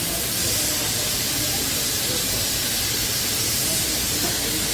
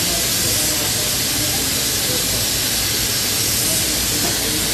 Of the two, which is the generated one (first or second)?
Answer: first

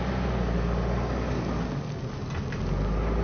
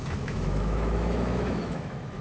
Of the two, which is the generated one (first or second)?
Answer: second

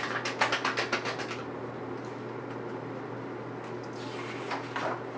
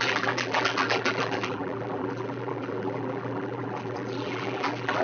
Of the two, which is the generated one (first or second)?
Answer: second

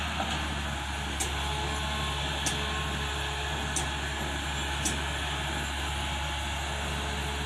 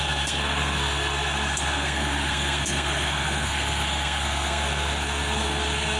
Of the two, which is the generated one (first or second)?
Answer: second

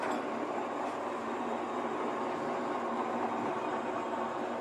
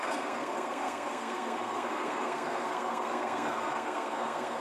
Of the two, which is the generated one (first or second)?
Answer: second